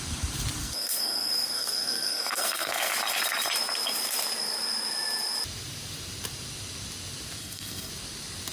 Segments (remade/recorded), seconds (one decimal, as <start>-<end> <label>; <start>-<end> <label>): 0.0-0.6 recorded; 0.6-2.9 remade; 2.9-7.4 recorded; 7.4-7.9 remade; 7.9-8.5 recorded